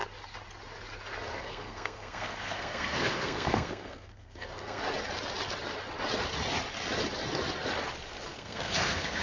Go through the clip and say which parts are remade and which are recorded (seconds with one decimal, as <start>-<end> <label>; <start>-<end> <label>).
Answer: 0.0-1.3 recorded; 1.3-4.8 remade; 4.8-8.3 recorded; 8.3-9.2 remade